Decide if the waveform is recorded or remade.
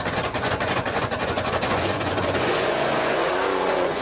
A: remade